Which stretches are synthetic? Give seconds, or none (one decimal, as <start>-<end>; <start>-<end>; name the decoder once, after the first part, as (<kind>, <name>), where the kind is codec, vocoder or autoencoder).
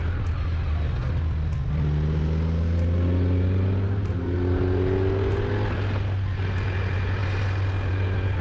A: none